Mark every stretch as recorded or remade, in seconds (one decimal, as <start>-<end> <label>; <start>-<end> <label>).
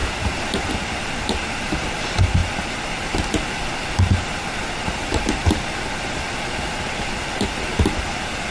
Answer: 0.0-0.7 remade; 0.7-8.5 recorded